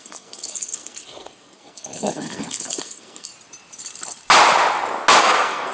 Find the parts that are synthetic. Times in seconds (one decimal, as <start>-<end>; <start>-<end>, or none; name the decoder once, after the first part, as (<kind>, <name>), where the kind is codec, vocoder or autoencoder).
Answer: 0.0-3.3 (codec, SNAC); 5.2-5.7